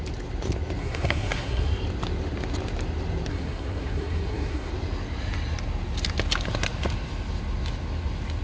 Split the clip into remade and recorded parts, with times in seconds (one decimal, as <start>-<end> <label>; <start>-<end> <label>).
0.0-0.8 recorded; 0.8-1.7 remade; 1.7-3.3 recorded; 3.3-4.7 remade; 4.7-8.4 recorded

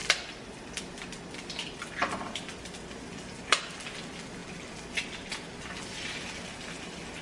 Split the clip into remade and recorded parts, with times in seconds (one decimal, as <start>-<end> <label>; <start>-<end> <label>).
0.0-7.2 recorded

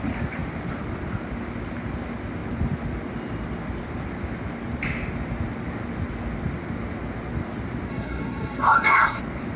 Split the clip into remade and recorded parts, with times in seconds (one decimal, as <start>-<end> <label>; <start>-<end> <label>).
0.0-7.9 recorded; 7.9-9.2 remade; 9.2-9.6 recorded

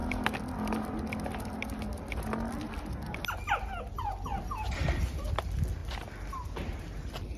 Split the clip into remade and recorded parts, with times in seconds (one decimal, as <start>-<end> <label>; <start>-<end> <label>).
0.0-7.4 recorded

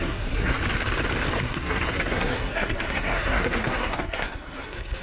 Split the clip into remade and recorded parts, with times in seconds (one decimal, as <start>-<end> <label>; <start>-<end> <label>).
0.0-0.6 remade; 0.6-1.4 recorded; 1.4-5.0 remade

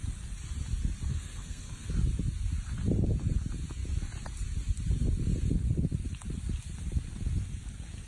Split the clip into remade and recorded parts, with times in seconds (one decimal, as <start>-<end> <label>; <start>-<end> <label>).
0.0-1.1 recorded; 1.1-1.9 remade; 1.9-8.1 recorded

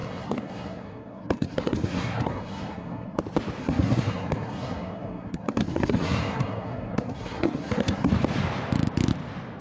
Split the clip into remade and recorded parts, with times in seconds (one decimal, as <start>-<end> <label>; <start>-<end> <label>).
0.0-3.2 remade; 3.2-3.6 recorded; 3.6-8.1 remade; 8.1-9.6 recorded

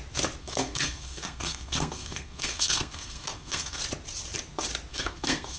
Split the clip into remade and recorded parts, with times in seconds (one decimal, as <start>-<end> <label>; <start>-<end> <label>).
0.0-0.4 recorded; 0.4-3.8 remade; 3.8-4.9 recorded; 4.9-5.6 remade